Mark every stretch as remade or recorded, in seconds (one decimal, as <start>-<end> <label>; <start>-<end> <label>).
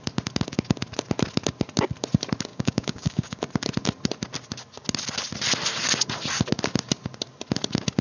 0.0-2.5 recorded; 2.5-3.4 remade; 3.4-8.0 recorded